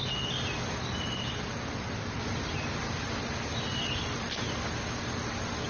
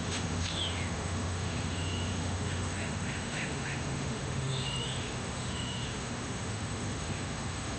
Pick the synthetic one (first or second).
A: second